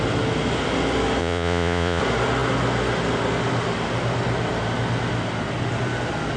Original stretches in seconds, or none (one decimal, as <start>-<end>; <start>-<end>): 0.0-1.2; 2.0-6.4